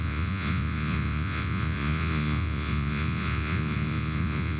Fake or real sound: fake